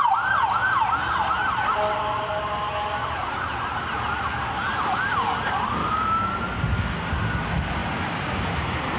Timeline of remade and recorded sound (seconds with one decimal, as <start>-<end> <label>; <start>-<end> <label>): 0.0-5.8 recorded; 5.8-6.3 remade; 6.3-9.0 recorded